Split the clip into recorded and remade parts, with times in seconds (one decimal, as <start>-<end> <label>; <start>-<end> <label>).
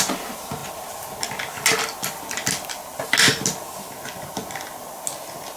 0.0-5.6 recorded